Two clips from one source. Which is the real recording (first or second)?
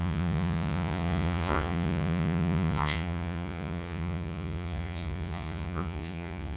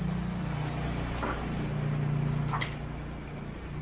second